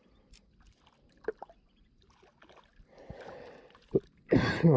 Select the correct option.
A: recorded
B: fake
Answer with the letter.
A